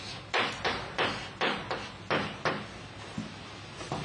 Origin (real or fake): real